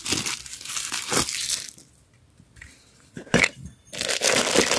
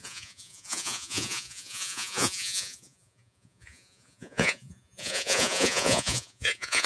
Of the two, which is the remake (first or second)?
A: second